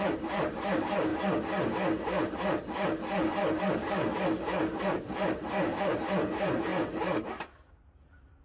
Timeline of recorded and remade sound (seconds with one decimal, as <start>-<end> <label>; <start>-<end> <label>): 0.0-1.1 remade; 1.1-3.6 recorded; 3.6-4.0 remade; 4.0-4.8 recorded; 4.8-6.7 remade; 6.7-7.5 recorded; 7.5-8.4 remade